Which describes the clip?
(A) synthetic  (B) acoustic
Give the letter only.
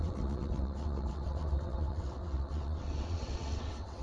A